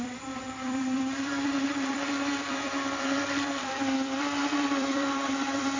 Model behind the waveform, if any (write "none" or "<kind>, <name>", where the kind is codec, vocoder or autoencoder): vocoder, BigVGAN v2